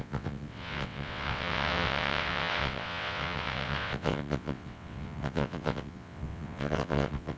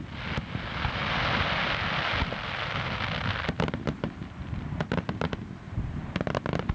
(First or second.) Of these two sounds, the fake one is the first